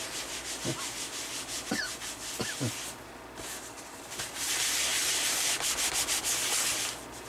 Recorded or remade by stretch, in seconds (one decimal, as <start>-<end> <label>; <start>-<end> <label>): 0.0-4.9 recorded; 4.9-5.9 remade; 5.9-7.3 recorded

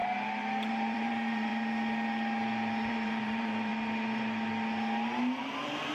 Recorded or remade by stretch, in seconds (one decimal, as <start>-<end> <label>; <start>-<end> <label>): 0.0-0.7 recorded; 0.7-1.5 remade; 1.5-2.9 recorded; 2.9-3.7 remade; 3.7-5.4 recorded; 5.4-5.9 remade

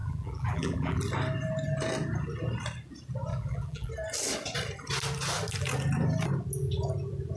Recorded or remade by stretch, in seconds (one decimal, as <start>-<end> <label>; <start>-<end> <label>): 0.0-1.0 remade; 1.0-3.3 recorded; 3.3-3.9 remade; 3.9-7.4 recorded

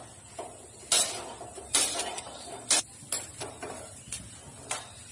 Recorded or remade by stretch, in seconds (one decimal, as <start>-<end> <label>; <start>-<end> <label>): 0.0-1.5 recorded; 1.5-2.6 remade; 2.6-3.3 recorded; 3.3-4.0 remade; 4.0-5.1 recorded

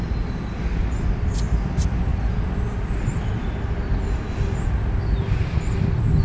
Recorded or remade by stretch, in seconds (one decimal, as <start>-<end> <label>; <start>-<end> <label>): 0.0-2.1 recorded; 2.1-3.5 remade; 3.5-6.2 recorded